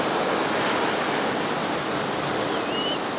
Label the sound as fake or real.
real